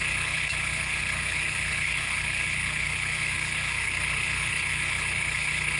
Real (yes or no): no